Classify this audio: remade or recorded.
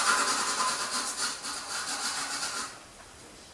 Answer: recorded